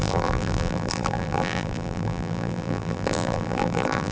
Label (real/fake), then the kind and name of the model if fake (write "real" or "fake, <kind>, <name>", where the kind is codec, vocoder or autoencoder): fake, vocoder, BigVGAN v2